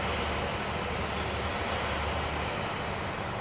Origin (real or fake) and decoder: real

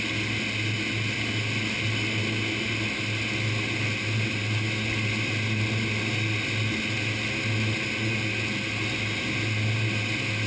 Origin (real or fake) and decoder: real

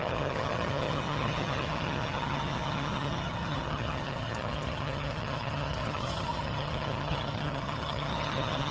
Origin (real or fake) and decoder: fake, vocoder, HiFi-GAN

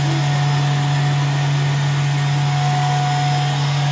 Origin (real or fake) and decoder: real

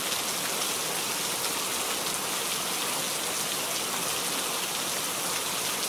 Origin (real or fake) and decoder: real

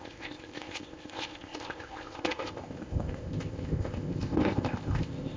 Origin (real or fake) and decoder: fake, codec, ZipCodec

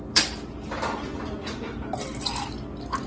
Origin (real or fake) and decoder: real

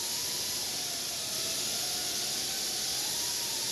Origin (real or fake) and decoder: real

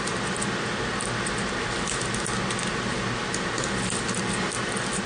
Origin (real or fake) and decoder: real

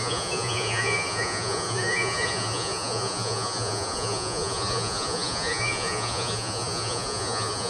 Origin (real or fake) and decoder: fake, vocoder, Vocos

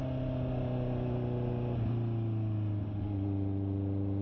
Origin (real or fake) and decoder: real